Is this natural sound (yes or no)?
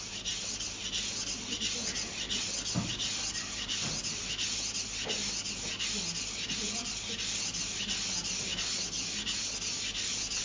yes